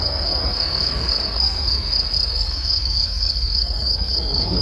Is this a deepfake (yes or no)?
yes